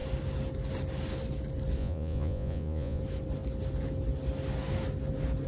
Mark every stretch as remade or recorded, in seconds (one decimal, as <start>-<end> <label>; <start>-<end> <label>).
0.0-1.8 recorded; 1.8-3.0 remade; 3.0-5.5 recorded